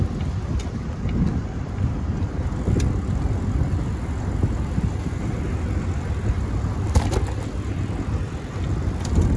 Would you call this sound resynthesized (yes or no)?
no